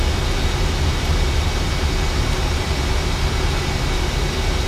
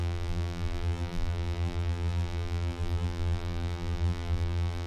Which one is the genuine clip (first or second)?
first